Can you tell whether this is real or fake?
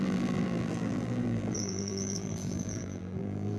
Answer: fake